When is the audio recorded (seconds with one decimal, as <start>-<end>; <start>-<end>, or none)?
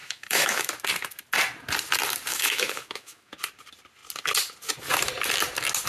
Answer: 0.7-2.3; 3.3-5.9